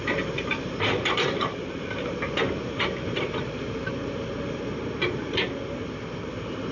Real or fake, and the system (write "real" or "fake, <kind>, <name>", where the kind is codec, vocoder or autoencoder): fake, vocoder, BigVGAN v2